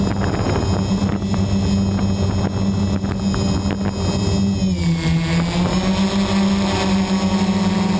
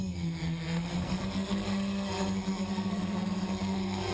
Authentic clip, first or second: first